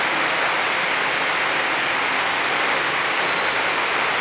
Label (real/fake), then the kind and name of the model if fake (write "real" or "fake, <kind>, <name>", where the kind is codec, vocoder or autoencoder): real